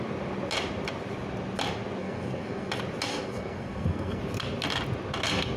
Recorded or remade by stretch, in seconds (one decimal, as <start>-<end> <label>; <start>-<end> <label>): 0.0-2.0 recorded; 2.0-2.7 remade; 2.7-3.1 recorded; 3.1-4.2 remade; 4.2-5.6 recorded